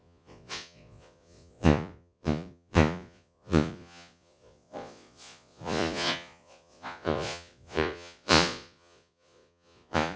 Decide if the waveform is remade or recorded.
remade